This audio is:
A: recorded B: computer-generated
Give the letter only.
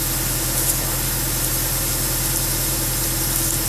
A